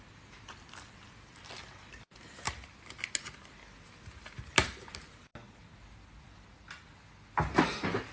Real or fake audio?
real